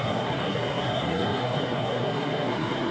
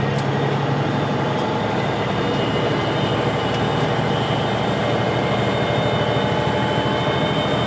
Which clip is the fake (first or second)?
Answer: first